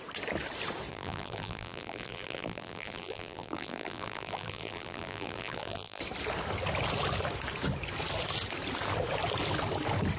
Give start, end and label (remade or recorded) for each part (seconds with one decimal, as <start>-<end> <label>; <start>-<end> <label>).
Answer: 0.0-0.9 recorded; 0.9-6.0 remade; 6.0-10.2 recorded